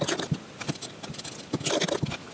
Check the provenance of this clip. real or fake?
real